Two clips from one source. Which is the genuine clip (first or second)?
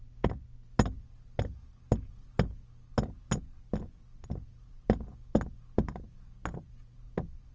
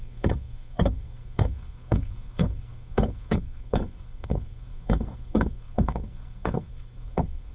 first